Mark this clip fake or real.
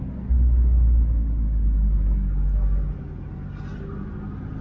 real